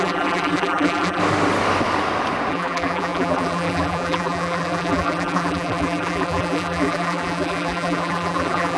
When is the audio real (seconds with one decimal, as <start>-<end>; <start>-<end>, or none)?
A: 1.2-2.5